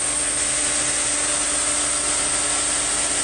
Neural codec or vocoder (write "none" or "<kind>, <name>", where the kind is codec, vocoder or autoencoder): none